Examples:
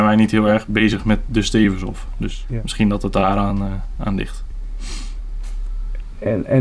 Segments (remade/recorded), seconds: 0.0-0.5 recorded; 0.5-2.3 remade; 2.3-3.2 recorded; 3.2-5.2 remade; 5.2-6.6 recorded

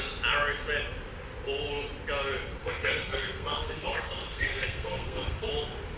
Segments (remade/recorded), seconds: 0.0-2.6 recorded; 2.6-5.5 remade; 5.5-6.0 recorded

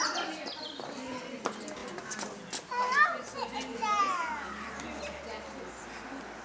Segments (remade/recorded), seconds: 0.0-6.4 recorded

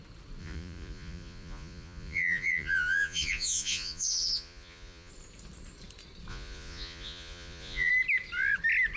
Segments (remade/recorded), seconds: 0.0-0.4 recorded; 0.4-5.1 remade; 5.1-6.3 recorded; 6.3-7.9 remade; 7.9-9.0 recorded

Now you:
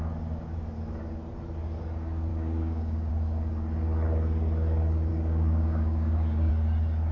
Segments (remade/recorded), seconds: 0.0-2.3 recorded; 2.3-3.1 remade; 3.1-5.1 recorded; 5.1-6.5 remade; 6.5-7.1 recorded

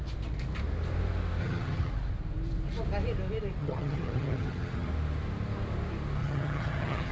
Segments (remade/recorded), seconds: 0.0-1.4 recorded; 1.4-1.9 remade; 1.9-3.6 recorded; 3.6-4.9 remade; 4.9-6.2 recorded; 6.2-7.1 remade

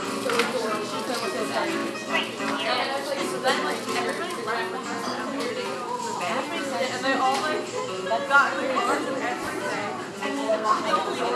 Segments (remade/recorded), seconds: 0.0-10.1 recorded; 10.1-10.8 remade; 10.8-11.4 recorded